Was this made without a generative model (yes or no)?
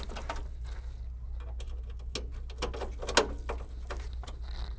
yes